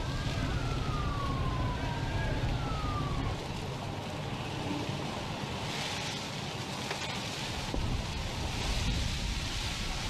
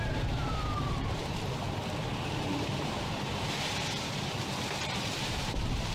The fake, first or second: second